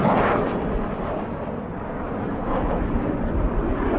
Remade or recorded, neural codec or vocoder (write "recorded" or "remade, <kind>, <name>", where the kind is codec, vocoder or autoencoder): recorded